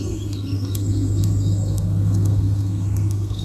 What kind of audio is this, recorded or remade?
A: remade